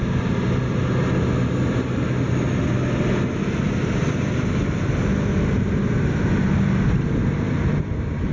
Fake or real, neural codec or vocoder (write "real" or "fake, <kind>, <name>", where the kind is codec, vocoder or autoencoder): real